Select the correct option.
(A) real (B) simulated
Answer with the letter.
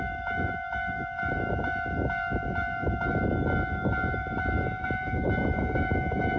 B